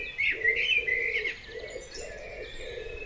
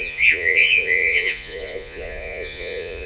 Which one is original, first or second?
first